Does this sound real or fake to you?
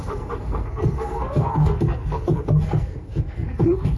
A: fake